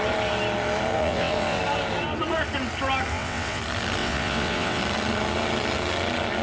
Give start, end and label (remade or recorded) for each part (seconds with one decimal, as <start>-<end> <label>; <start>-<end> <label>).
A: 0.0-0.9 recorded; 0.9-1.6 remade; 1.6-3.1 recorded; 3.1-3.6 remade; 3.6-4.0 recorded; 4.0-4.8 remade; 4.8-6.4 recorded